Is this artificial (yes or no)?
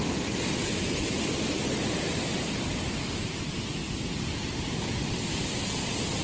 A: no